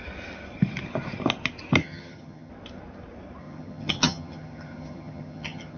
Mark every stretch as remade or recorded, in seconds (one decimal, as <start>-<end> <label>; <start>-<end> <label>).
0.0-1.8 recorded; 1.8-2.5 remade; 2.5-3.4 recorded; 3.4-5.8 remade